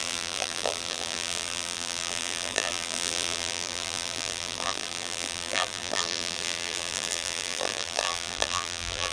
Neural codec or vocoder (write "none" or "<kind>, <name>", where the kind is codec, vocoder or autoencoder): vocoder, BigVGAN v2